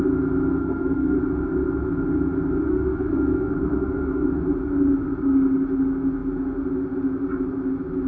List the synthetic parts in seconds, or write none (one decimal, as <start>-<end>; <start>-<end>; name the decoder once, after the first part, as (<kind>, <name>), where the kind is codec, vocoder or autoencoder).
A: 0.6-1.2 (codec, SNAC); 2.7-4.3